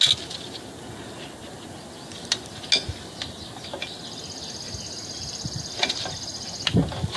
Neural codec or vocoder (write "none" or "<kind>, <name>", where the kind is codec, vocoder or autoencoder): none